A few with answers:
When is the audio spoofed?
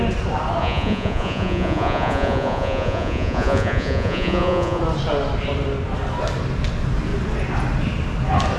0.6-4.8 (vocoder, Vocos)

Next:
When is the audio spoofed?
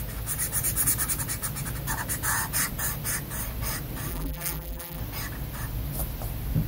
4.1-5.0 (vocoder, BigVGAN v2)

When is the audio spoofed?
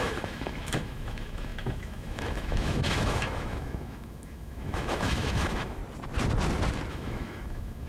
0.0-5.8 (autoencoder, DAC-VAE); 6.9-7.9